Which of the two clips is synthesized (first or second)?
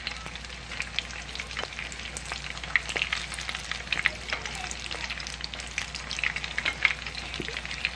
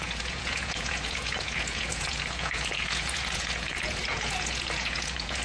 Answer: second